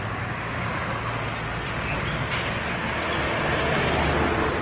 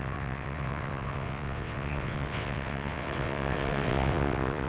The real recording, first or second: first